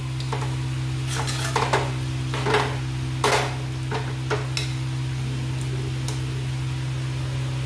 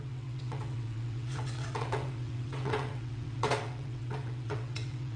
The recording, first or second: first